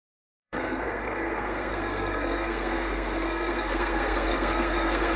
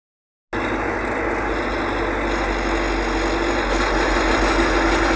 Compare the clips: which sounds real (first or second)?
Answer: second